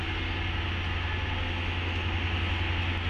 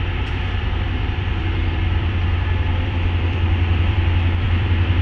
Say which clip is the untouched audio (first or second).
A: first